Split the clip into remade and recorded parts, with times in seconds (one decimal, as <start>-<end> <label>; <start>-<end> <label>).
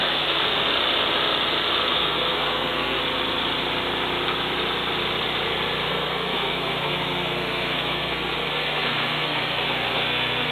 0.0-0.7 remade; 0.7-1.9 recorded; 1.9-3.0 remade; 3.0-5.9 recorded; 5.9-10.5 remade